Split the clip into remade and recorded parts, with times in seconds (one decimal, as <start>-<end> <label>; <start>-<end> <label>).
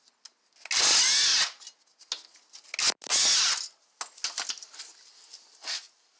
0.0-6.2 recorded